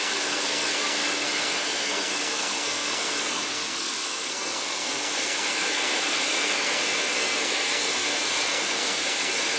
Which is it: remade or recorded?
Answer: remade